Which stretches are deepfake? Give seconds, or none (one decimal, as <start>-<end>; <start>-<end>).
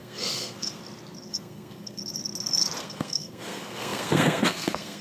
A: 0.0-0.8; 1.3-2.0; 2.8-5.0